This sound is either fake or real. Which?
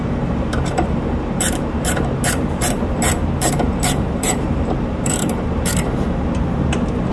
fake